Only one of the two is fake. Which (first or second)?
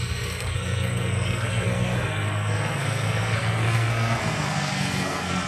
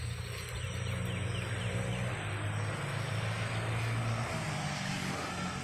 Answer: first